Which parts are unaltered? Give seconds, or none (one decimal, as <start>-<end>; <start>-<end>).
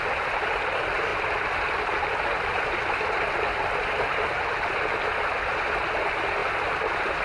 0.0-7.2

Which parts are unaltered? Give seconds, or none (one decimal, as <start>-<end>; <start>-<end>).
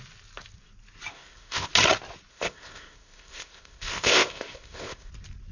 0.0-1.1; 1.7-2.3; 5.1-5.5